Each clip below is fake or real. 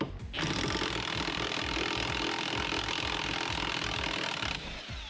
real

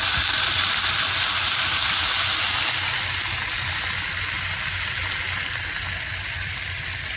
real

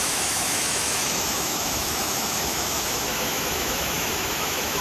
fake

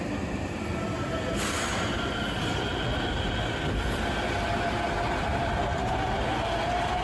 real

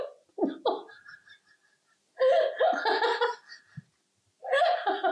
real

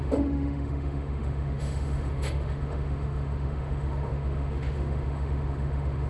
fake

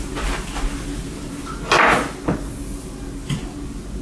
real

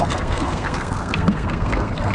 fake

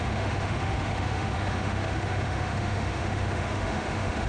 fake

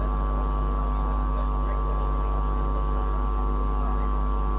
real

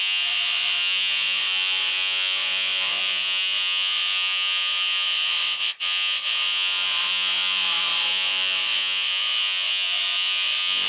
fake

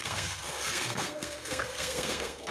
fake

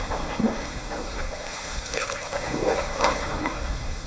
fake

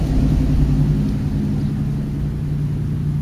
real